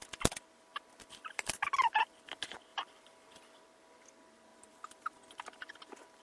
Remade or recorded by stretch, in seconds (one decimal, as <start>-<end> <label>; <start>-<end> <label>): 0.0-0.7 recorded; 0.7-2.1 remade; 2.1-2.7 recorded; 2.7-3.6 remade; 3.6-4.5 recorded; 4.5-5.1 remade; 5.1-6.2 recorded